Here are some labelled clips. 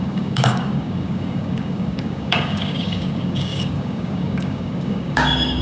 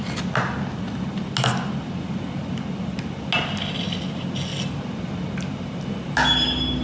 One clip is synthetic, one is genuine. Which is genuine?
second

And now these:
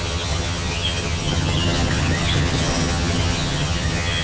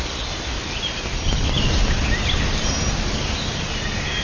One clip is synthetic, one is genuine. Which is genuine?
second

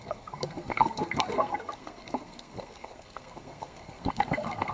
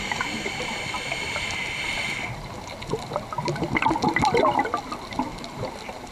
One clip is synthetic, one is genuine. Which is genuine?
second